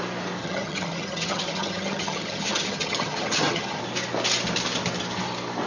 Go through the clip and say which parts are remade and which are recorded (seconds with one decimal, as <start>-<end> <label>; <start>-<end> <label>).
0.0-0.4 recorded; 0.4-3.8 remade; 3.8-5.7 recorded